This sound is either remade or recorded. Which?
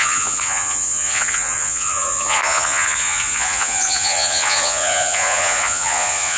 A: remade